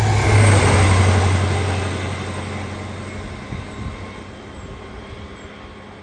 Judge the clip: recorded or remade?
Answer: recorded